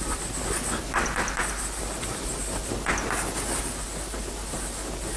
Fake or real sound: real